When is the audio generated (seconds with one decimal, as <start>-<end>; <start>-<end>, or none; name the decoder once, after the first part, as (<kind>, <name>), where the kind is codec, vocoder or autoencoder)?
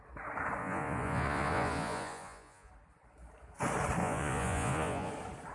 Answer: 0.6-2.7 (vocoder, Vocos); 4.0-5.1